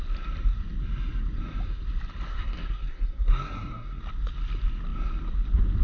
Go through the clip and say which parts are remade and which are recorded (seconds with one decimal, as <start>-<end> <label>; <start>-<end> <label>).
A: 0.0-2.3 recorded; 2.3-4.0 remade; 4.0-5.8 recorded